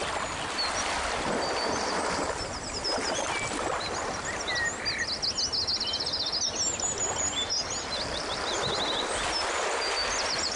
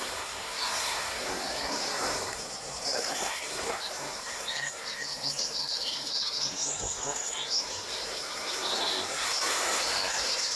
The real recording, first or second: first